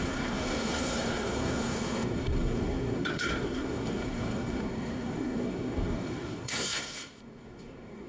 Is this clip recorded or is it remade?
remade